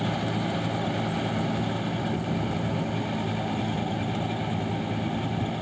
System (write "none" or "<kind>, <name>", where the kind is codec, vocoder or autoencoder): none